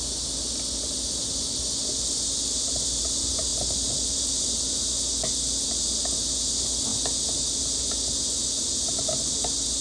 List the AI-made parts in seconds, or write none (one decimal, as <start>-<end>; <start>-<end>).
none